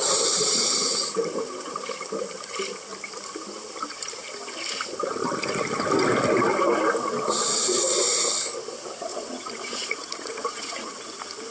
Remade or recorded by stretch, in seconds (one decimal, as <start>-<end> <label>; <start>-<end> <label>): 0.0-0.5 recorded; 0.5-1.1 remade; 1.1-9.1 recorded; 9.1-11.1 remade; 11.1-11.5 recorded